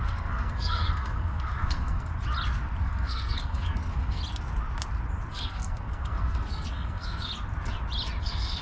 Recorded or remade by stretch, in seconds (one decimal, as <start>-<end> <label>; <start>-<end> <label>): 0.0-2.1 remade; 2.1-2.8 recorded; 2.8-4.2 remade; 4.2-5.3 recorded; 5.3-7.3 remade; 7.3-8.2 recorded; 8.2-8.6 remade